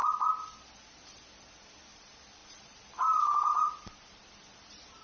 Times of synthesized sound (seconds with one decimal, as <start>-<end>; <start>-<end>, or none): none